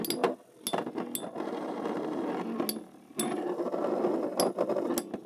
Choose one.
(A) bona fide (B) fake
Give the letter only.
A